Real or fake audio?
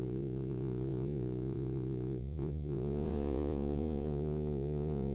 fake